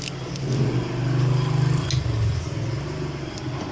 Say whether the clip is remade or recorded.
recorded